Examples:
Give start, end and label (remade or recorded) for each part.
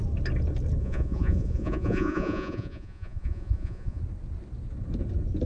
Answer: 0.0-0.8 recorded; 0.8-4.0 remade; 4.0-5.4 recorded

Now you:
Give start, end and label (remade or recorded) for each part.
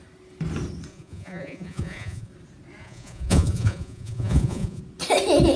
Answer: 0.0-0.9 recorded; 0.9-2.3 remade; 2.3-2.8 recorded; 2.8-4.8 remade; 4.8-5.6 recorded